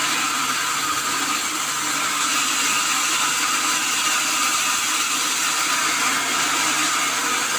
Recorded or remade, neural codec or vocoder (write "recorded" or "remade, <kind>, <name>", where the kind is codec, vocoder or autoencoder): recorded